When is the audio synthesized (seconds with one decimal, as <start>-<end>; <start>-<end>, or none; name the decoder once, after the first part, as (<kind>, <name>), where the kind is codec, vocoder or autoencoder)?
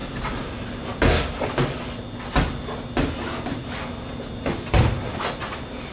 none